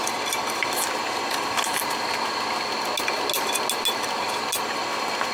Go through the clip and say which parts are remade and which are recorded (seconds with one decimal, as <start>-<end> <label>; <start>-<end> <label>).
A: 0.0-5.3 recorded